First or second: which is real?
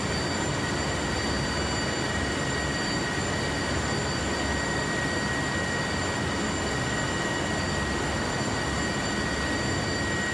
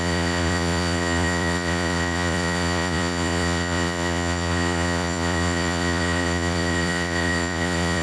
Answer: first